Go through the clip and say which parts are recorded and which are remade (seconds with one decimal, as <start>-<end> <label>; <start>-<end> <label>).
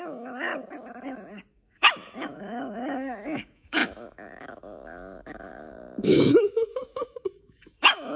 0.0-0.5 remade; 0.5-1.5 recorded; 1.5-8.2 remade